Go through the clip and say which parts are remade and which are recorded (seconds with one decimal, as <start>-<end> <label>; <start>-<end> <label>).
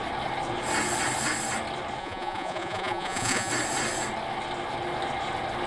0.0-2.0 recorded; 2.0-3.5 remade; 3.5-5.7 recorded